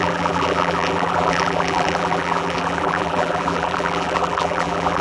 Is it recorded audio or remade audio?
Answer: remade